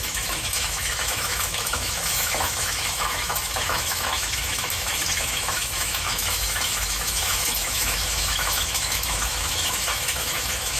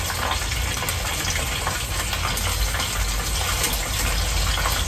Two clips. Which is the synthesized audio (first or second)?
first